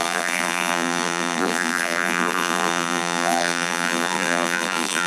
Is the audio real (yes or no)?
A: no